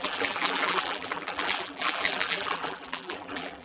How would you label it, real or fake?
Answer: fake